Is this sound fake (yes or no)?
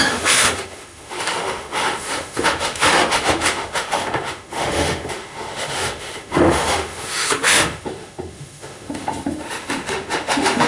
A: yes